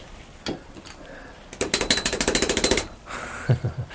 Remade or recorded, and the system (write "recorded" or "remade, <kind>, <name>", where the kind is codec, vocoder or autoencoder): recorded